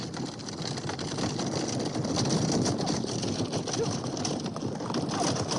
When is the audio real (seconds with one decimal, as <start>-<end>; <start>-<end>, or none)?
0.0-5.6